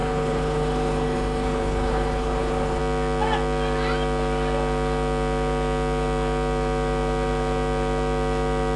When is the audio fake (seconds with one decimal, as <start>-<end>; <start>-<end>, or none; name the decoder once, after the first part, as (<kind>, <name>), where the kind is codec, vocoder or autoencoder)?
0.0-2.8 (codec, HILCodec)

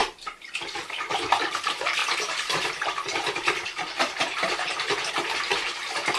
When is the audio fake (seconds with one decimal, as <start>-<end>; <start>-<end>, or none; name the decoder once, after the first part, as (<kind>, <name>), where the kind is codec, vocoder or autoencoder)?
none

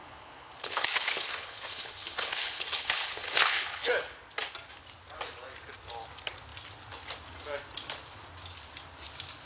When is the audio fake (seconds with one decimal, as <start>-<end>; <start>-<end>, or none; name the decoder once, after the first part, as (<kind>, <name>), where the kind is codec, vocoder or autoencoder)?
0.0-3.9 (codec, HILCodec)